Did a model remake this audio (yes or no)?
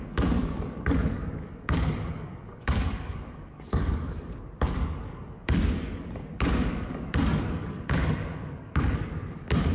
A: yes